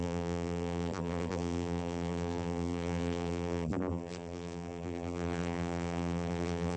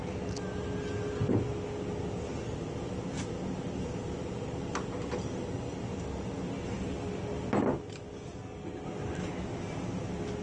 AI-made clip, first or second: first